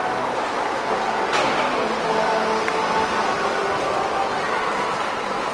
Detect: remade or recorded recorded